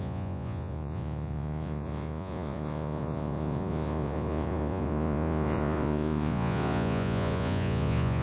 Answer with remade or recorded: remade